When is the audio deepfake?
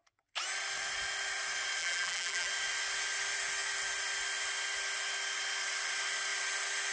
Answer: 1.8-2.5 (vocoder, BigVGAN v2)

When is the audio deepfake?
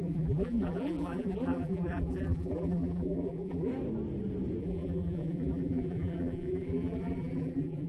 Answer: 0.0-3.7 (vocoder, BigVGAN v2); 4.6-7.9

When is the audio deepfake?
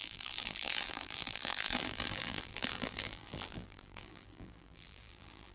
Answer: 0.0-5.5 (vocoder, BigVGAN v2)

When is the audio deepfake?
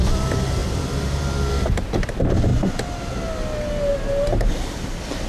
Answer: 0.6-1.5 (vocoder, BigVGAN v2); 3.9-4.5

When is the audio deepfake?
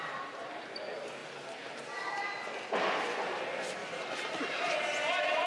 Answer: 3.8-5.5 (vocoder, BigVGAN v2)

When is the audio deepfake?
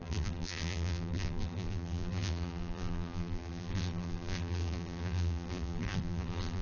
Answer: 0.0-6.6 (vocoder, BigVGAN v2)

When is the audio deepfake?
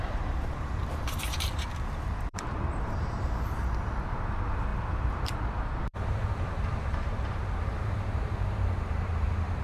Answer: 0.0-9.6 (vocoder, BigVGAN v2)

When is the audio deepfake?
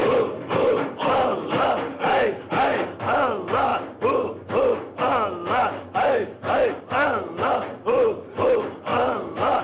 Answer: 0.0-2.1 (vocoder, BigVGAN v2); 8.9-9.6